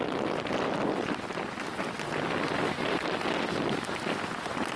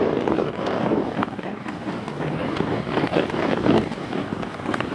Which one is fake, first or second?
second